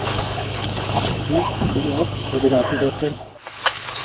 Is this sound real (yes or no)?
no